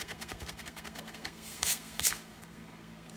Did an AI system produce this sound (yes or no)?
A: yes